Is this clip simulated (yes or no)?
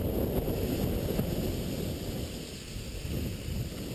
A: no